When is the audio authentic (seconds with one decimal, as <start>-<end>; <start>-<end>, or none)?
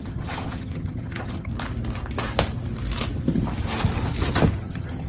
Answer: 1.5-4.6